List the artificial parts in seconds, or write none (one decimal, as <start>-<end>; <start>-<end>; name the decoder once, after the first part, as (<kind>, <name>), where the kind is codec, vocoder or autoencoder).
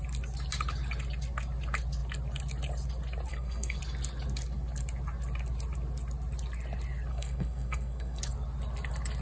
3.3-3.8 (codec, SNAC); 7.1-8.2